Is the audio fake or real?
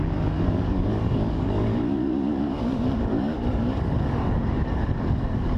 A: fake